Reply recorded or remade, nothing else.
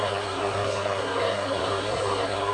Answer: remade